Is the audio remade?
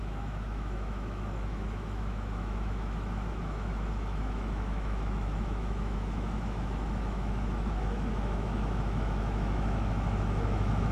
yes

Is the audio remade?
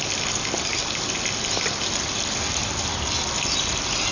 no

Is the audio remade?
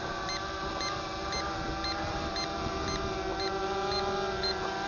no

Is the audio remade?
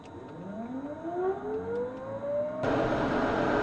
no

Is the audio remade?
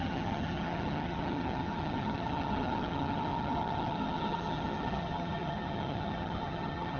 yes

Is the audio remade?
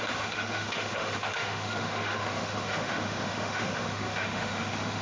yes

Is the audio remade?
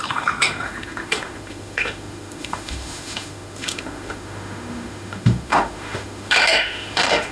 yes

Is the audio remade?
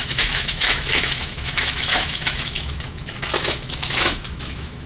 yes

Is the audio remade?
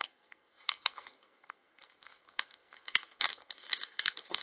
yes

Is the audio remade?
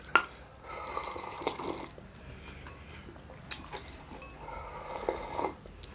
no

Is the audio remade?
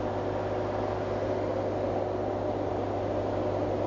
no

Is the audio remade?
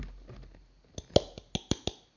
no